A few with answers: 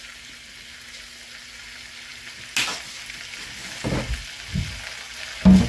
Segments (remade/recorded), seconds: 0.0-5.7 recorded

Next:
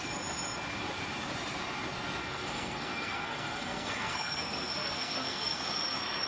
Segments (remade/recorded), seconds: 0.0-2.2 recorded; 2.2-5.6 remade; 5.6-6.3 recorded